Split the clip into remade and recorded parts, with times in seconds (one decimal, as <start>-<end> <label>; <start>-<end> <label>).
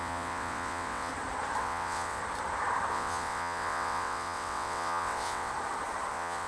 0.0-1.1 remade; 1.1-1.6 recorded; 1.6-2.2 remade; 2.2-2.9 recorded; 2.9-5.5 remade; 5.5-6.1 recorded; 6.1-6.5 remade